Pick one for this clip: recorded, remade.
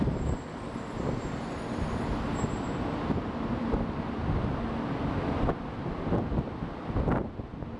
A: recorded